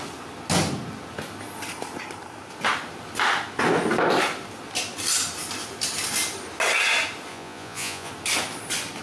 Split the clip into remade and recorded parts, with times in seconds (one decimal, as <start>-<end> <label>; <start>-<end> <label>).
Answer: 0.0-7.3 recorded; 7.3-8.1 remade; 8.1-9.0 recorded